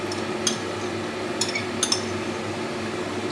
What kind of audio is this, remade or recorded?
recorded